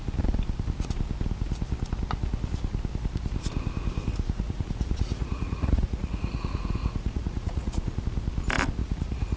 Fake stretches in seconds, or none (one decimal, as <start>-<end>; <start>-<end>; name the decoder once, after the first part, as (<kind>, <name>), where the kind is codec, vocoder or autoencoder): 4.1-8.0 (vocoder, Vocos); 8.8-9.4